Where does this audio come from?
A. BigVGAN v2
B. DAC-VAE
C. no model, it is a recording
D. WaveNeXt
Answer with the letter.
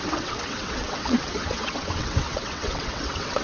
D